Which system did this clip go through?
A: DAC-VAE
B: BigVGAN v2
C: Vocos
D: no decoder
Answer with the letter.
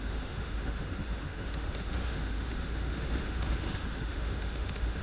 A